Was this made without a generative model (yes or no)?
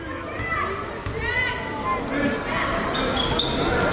yes